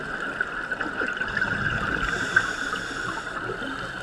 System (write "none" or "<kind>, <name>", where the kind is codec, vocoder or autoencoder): none